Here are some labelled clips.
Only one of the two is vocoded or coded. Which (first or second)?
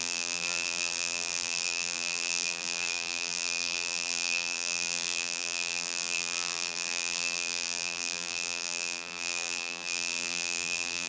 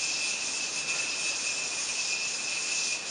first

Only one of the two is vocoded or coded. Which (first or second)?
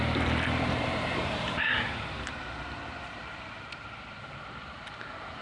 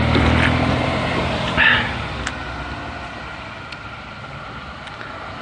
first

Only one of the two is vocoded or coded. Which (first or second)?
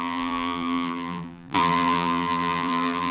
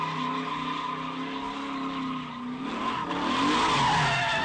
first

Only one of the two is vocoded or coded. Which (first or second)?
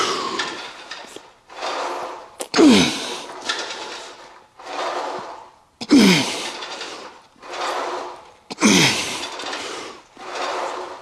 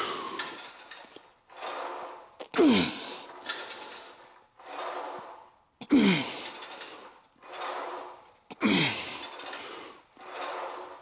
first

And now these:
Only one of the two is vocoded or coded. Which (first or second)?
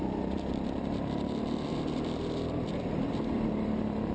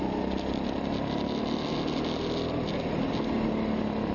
first